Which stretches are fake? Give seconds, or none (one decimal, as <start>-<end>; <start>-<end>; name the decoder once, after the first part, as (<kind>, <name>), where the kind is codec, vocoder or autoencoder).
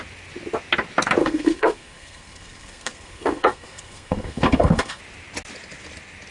1.2-5.0 (codec, SNAC)